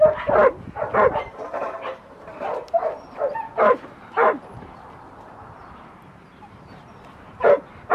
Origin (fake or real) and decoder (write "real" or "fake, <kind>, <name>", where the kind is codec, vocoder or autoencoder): fake, vocoder, BigVGAN v2